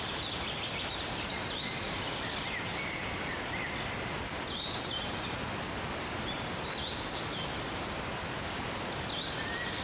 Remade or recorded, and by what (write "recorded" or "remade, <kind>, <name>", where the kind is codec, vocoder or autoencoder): recorded